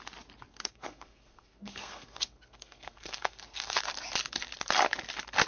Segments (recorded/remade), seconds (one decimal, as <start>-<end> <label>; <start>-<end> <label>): 0.0-0.5 recorded; 0.5-3.8 remade; 3.8-5.5 recorded